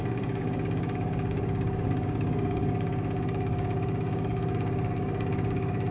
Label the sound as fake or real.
fake